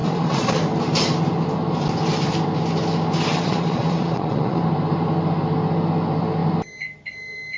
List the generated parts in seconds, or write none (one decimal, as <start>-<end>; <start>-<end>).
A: 0.0-0.5; 3.3-4.6